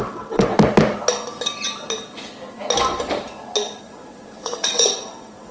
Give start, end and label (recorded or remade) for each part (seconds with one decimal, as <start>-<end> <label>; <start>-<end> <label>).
0.0-0.5 remade; 0.5-3.8 recorded; 3.8-5.5 remade